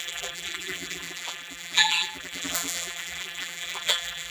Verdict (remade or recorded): remade